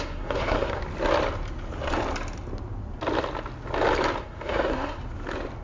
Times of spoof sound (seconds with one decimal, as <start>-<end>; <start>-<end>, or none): 0.0-0.8; 4.2-5.0